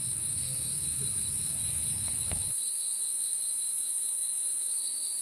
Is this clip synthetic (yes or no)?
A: yes